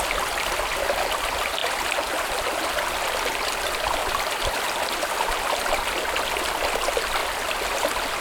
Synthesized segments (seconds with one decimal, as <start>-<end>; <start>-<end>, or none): 1.6-2.7; 4.0-5.7